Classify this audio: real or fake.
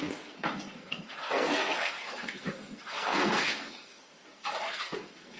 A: fake